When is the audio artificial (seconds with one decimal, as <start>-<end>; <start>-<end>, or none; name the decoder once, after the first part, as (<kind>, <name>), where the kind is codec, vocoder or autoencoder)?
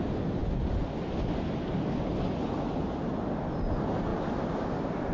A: none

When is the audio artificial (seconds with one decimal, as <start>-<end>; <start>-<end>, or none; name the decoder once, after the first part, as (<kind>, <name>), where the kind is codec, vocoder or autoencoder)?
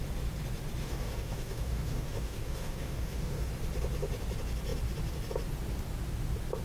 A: 0.8-3.5 (codec, DAC)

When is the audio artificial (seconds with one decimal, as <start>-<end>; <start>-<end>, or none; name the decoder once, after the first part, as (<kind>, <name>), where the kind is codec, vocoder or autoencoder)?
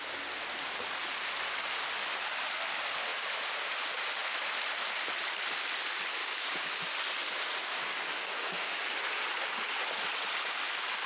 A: 6.2-6.8 (codec, DAC); 7.6-8.8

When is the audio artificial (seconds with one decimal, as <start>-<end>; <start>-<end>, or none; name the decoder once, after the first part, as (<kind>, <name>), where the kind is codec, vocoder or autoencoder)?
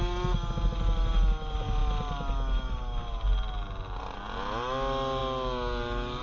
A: none